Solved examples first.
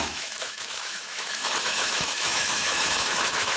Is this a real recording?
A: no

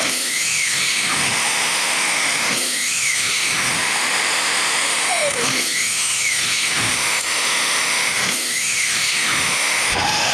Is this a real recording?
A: no